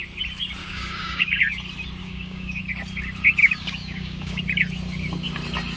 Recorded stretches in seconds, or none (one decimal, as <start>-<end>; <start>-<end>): 0.0-0.6; 1.4-2.0; 2.6-3.4; 4.4-5.8